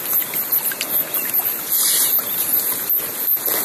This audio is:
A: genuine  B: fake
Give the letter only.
A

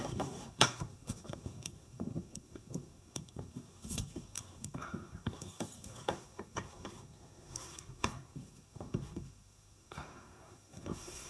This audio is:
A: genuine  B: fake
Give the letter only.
B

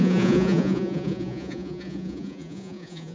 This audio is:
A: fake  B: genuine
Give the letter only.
A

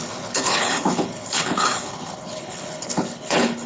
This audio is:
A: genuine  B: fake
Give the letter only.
B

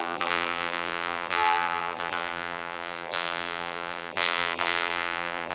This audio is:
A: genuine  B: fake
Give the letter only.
B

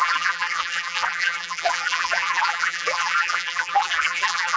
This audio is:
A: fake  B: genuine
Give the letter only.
A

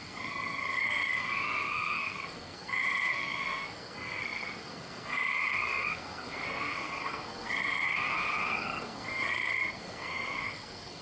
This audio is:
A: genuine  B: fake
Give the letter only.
B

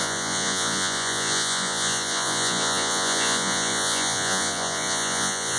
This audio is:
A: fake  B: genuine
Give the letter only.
A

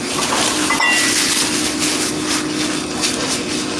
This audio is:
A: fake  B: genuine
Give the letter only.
B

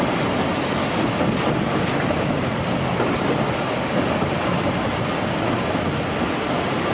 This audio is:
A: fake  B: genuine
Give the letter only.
B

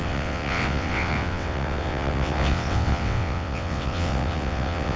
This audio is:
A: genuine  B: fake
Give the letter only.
B